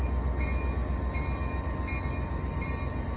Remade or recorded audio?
recorded